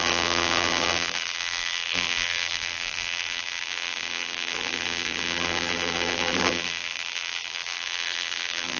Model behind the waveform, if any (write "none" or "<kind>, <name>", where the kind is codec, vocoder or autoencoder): vocoder, BigVGAN v2